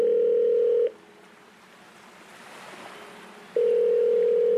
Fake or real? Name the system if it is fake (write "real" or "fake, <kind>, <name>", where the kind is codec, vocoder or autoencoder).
real